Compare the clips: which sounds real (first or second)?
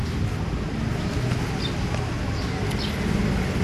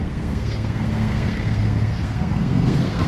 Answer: first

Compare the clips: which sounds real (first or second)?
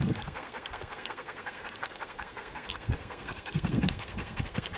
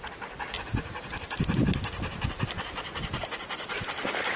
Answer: second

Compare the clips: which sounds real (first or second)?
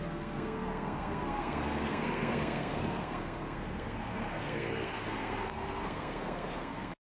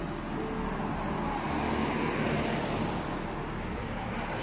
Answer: second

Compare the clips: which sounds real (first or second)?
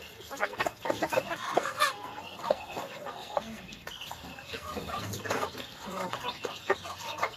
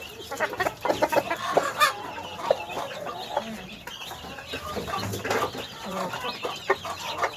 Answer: second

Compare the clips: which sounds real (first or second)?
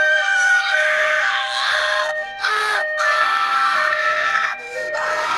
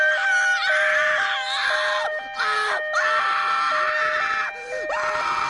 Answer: second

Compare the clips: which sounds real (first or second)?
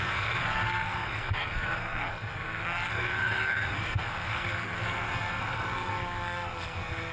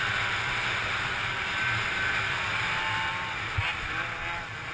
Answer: second